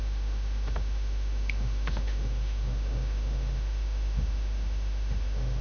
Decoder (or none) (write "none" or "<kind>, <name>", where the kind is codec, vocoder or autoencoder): autoencoder, DAC-VAE